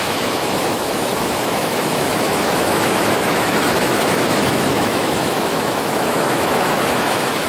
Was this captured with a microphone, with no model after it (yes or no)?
no